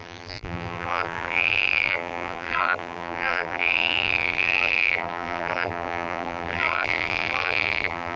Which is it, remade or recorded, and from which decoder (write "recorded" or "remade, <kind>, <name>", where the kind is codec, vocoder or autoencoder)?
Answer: remade, vocoder, BigVGAN v2